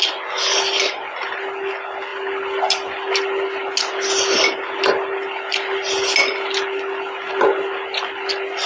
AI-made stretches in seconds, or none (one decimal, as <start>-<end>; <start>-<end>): none